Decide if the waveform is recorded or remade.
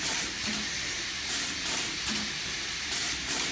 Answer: recorded